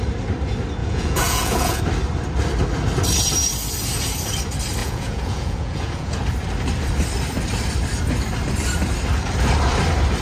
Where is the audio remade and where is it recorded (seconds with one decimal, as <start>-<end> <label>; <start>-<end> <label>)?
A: 0.0-0.8 recorded; 0.8-1.8 remade; 1.8-4.8 recorded; 4.8-6.2 remade; 6.2-10.2 recorded